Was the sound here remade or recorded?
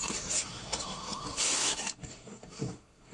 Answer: remade